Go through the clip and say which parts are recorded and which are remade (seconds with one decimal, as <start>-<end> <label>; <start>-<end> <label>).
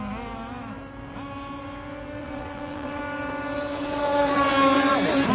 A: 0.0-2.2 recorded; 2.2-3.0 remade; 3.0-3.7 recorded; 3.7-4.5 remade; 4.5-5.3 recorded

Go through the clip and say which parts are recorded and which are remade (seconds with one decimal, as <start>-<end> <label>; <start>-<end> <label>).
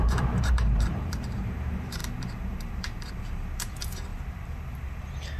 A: 0.0-5.4 remade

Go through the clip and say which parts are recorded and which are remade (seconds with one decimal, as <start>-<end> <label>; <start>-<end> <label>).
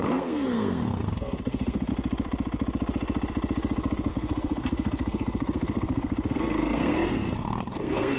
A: 0.0-1.9 remade; 1.9-4.1 recorded; 4.1-8.2 remade